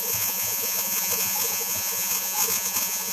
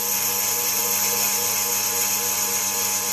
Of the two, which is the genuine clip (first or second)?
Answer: second